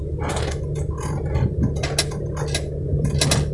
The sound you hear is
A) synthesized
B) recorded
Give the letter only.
B